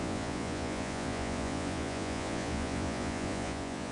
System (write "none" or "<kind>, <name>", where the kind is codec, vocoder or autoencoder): vocoder, Vocos